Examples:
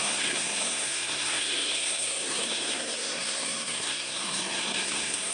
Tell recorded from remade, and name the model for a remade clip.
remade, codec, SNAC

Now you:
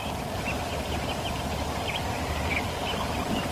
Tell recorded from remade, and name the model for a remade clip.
recorded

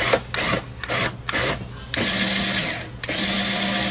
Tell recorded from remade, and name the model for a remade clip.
recorded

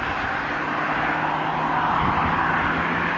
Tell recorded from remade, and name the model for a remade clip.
recorded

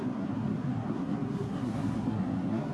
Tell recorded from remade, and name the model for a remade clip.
remade, codec, SNAC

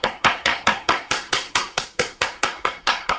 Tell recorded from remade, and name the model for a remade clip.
remade, codec, SNAC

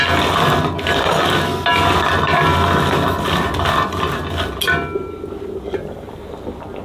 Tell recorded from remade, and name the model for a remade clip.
recorded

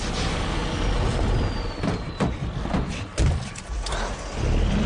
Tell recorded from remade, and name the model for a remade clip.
recorded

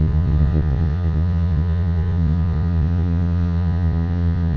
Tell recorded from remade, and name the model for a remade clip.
remade, vocoder, Vocos